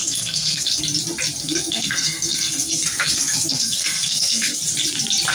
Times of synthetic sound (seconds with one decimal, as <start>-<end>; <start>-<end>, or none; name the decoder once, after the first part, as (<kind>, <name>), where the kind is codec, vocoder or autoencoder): 0.0-0.8 (codec, SNAC); 1.4-4.6